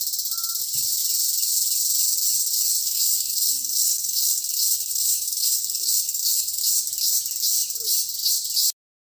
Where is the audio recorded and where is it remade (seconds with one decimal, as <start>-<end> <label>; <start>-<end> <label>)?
0.0-2.8 recorded; 2.8-6.6 remade; 6.6-9.0 recorded